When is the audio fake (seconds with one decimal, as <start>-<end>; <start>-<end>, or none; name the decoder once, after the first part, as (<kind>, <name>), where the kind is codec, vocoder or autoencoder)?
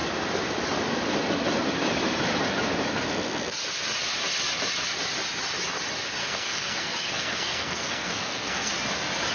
6.2-8.7 (codec, SNAC)